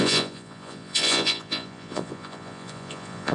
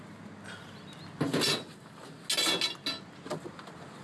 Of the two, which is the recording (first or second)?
second